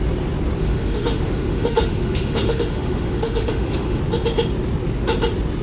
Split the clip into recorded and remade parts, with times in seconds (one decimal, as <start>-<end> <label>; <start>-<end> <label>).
0.0-0.6 recorded; 0.6-4.0 remade; 4.0-5.6 recorded